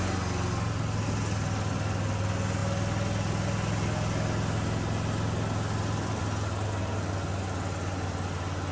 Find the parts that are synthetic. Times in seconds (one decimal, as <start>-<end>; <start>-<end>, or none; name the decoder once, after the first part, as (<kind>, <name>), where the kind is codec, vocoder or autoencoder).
none